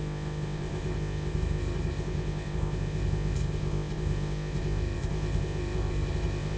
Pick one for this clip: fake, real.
fake